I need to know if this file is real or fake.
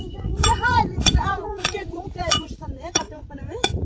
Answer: fake